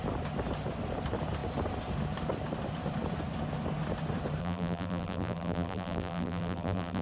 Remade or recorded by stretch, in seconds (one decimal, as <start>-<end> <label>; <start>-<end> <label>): 0.0-4.4 recorded; 4.4-7.0 remade